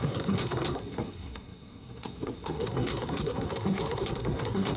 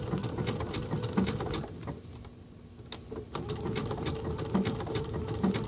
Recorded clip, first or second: second